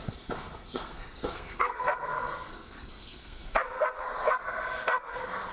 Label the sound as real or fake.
fake